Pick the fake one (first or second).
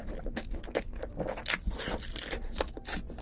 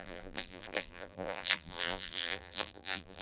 second